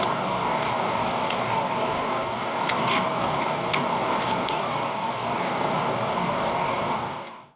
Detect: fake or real fake